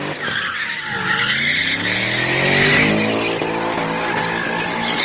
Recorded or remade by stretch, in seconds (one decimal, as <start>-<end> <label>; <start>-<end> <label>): 0.0-5.0 recorded